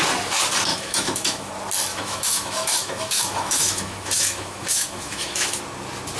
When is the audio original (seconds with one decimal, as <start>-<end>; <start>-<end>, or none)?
0.0-0.7; 1.5-1.9; 5.6-6.2